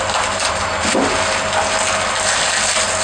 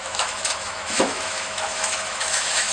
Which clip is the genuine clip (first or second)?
first